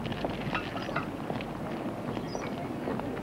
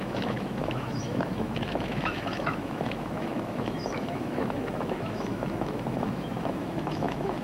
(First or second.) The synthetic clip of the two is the second